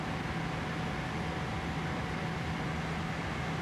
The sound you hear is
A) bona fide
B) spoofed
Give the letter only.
A